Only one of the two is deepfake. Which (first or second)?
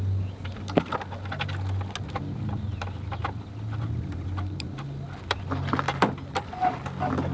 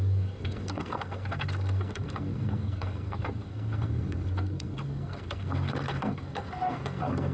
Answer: second